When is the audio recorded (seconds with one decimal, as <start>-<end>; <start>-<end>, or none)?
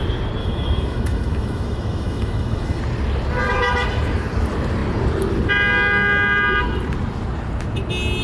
0.0-0.4; 2.8-8.2